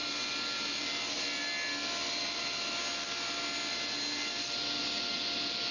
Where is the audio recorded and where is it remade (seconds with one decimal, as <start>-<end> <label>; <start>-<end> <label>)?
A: 0.0-5.7 recorded